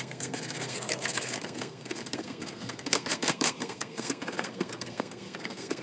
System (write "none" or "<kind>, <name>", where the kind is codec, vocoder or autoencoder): codec, SNAC